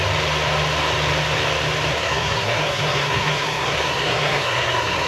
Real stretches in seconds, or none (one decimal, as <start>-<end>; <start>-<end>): 0.0-1.9